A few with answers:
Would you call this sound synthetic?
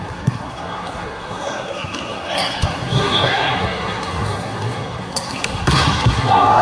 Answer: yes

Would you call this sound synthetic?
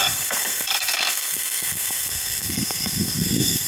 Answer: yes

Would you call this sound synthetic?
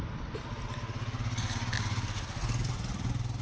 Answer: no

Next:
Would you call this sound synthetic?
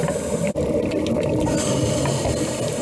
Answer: no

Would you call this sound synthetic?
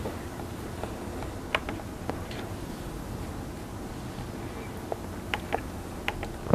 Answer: no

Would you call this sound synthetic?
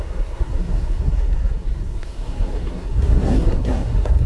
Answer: yes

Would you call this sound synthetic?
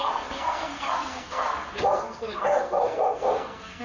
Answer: yes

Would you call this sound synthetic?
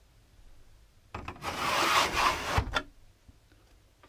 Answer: no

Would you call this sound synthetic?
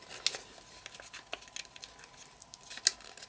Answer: no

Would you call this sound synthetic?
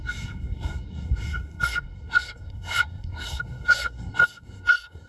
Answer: yes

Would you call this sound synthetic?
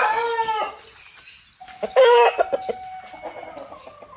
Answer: no